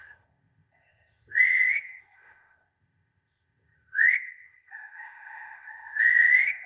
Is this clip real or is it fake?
fake